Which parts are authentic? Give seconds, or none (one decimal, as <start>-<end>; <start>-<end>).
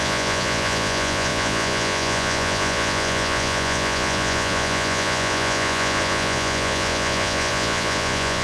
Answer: none